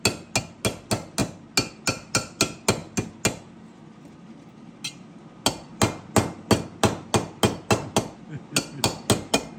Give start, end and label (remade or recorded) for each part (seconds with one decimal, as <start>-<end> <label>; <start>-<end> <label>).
0.0-9.6 recorded